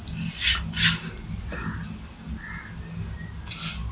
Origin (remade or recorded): recorded